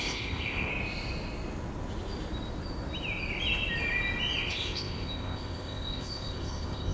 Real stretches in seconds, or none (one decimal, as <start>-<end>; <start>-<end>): 0.7-4.5